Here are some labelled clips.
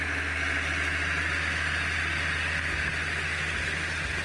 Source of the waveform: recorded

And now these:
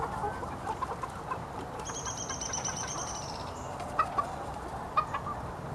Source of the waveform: recorded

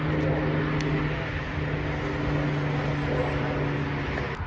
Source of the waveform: recorded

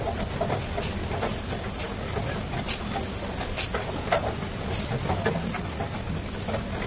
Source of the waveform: recorded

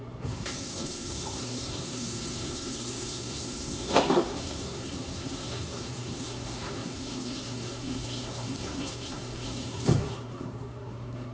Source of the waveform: remade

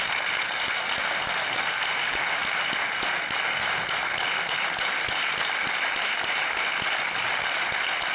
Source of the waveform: recorded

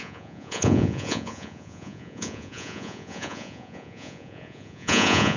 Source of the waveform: remade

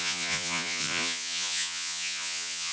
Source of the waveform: remade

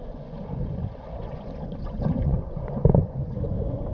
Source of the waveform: remade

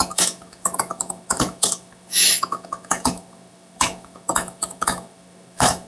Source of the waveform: remade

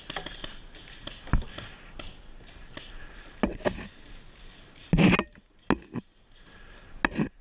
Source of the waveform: recorded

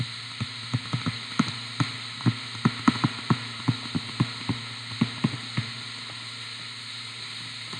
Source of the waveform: recorded